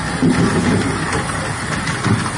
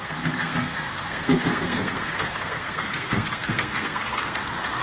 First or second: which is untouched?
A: first